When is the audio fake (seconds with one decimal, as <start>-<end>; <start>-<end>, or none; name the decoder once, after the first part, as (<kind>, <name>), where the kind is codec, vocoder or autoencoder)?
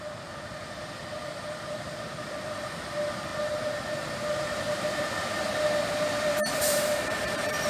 0.0-7.7 (vocoder, BigVGAN v2)